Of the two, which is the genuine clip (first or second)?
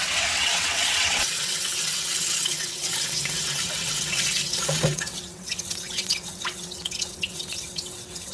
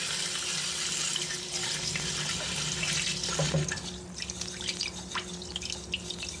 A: second